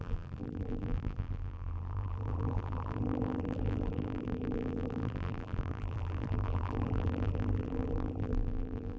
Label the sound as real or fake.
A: fake